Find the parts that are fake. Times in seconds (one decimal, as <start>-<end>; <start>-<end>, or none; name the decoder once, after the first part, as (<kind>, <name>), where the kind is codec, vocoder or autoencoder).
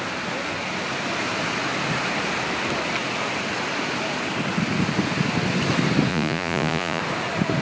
6.1-7.0 (vocoder, Vocos)